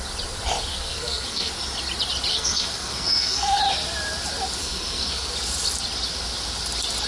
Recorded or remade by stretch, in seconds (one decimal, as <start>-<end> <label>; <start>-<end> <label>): 0.0-0.7 recorded; 0.7-1.5 remade; 1.5-2.3 recorded; 2.3-3.6 remade; 3.6-4.6 recorded; 4.6-5.3 remade; 5.3-7.1 recorded